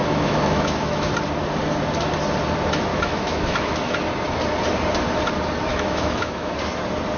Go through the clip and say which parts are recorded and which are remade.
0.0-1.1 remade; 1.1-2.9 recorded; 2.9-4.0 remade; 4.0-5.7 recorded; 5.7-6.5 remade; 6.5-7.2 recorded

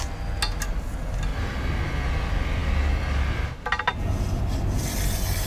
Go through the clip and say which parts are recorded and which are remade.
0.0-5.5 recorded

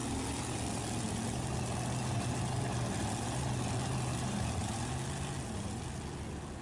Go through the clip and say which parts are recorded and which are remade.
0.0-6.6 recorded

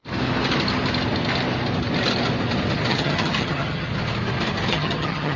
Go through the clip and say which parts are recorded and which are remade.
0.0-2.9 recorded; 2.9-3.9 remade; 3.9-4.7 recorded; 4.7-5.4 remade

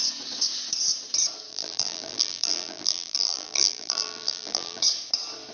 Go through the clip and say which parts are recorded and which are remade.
0.0-1.5 recorded; 1.5-4.8 remade; 4.8-5.5 recorded

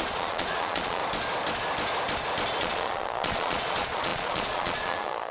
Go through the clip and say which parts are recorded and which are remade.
0.0-1.0 remade; 1.0-2.6 recorded; 2.6-5.3 remade

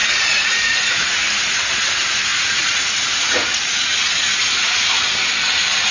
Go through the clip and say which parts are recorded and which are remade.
0.0-1.4 remade; 1.4-2.3 recorded; 2.3-4.7 remade; 4.7-5.9 recorded

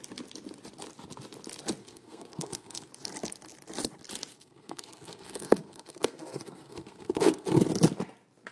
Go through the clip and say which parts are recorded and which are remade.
0.0-1.8 recorded; 1.8-2.9 remade; 2.9-4.3 recorded; 4.3-7.6 remade; 7.6-8.5 recorded